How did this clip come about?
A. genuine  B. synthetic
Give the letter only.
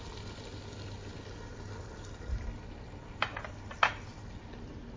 A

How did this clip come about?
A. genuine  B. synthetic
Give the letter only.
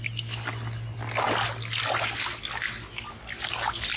A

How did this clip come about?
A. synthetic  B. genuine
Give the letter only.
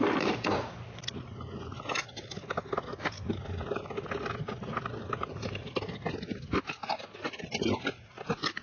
B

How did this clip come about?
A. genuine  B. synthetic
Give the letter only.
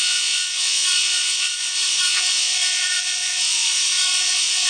B